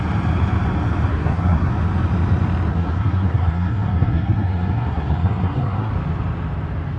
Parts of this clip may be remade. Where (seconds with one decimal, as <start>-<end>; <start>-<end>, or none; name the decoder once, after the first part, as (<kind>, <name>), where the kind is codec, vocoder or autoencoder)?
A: 1.1-1.7 (codec, SNAC); 2.7-5.9